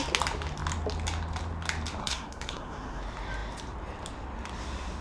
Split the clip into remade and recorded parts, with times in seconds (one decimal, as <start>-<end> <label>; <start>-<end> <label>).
0.0-2.0 recorded; 2.0-3.0 remade; 3.0-5.0 recorded